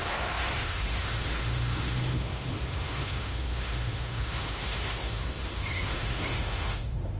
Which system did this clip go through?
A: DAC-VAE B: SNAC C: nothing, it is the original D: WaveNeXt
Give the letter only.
A